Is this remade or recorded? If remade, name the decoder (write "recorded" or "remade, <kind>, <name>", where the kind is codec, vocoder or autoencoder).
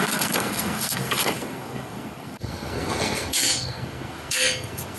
remade, codec, SNAC